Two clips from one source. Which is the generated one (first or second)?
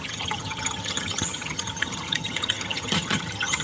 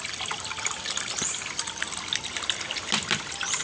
first